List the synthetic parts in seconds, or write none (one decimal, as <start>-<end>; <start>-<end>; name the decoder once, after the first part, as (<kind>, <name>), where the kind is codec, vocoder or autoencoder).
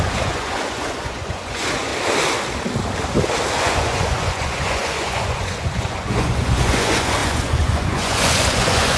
0.0-1.9 (vocoder, Vocos); 3.6-9.0